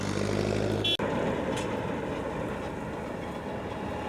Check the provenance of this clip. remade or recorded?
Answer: recorded